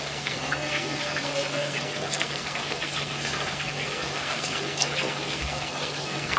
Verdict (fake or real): fake